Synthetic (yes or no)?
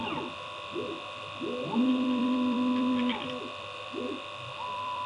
yes